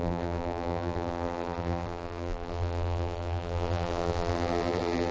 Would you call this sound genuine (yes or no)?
no